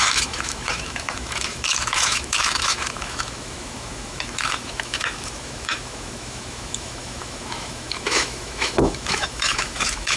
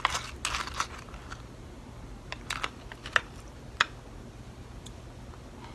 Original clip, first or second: second